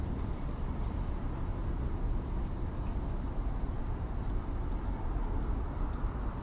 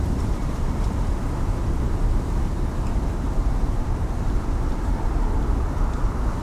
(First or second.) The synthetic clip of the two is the second